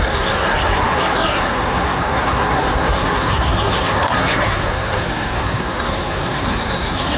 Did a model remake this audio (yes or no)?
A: yes